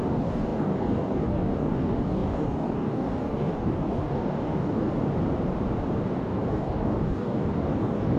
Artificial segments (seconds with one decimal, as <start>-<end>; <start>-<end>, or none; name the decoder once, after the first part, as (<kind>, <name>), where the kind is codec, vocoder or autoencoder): 0.0-4.9 (codec, DAC); 6.0-8.2